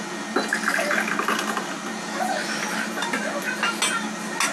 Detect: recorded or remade recorded